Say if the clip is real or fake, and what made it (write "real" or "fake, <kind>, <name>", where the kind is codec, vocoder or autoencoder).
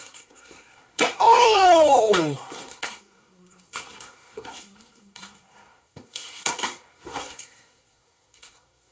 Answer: fake, codec, SNAC